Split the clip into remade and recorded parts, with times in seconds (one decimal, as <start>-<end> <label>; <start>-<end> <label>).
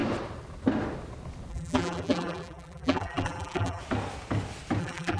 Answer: 0.0-1.5 recorded; 1.5-3.8 remade; 3.8-4.8 recorded; 4.8-5.2 remade